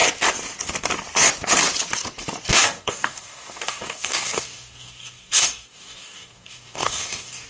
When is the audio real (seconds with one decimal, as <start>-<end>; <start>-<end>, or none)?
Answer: 0.0-2.5